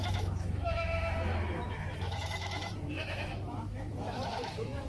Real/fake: fake